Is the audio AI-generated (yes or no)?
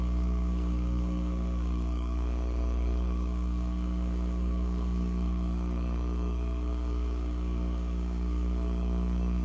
yes